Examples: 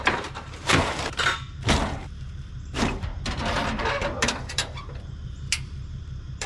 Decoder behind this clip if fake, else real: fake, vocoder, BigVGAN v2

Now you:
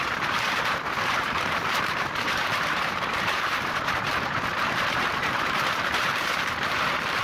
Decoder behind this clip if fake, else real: fake, vocoder, BigVGAN v2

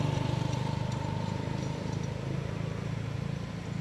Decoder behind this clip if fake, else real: real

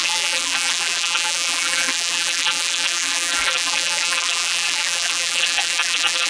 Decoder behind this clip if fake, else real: fake, vocoder, BigVGAN v2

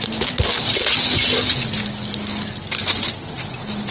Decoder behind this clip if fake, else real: real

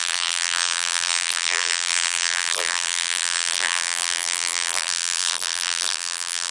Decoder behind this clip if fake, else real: fake, vocoder, BigVGAN v2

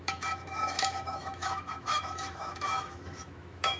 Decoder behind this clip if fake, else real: fake, autoencoder, DAC-VAE